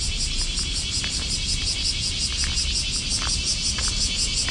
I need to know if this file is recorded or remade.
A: recorded